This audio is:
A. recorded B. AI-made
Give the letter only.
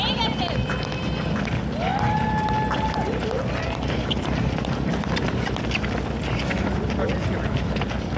A